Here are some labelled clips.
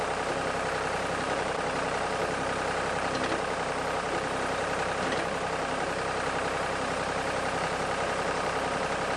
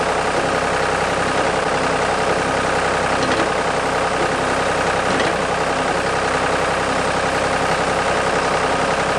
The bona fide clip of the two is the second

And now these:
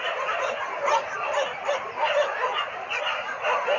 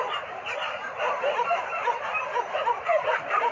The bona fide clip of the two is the first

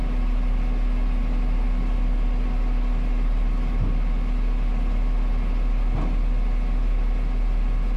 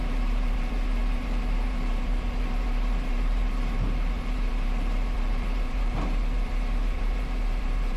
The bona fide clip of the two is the first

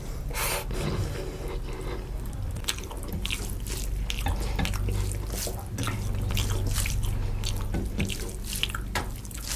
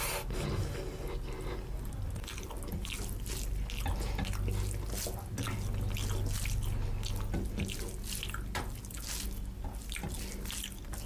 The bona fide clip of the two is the second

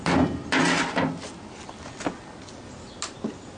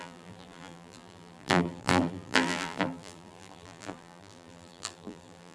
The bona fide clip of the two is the first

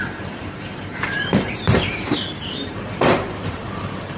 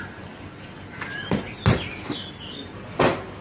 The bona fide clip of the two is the second